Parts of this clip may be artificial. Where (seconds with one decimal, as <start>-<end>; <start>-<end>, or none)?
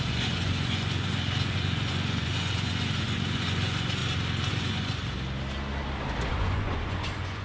0.0-4.0; 4.5-5.0; 6.3-7.4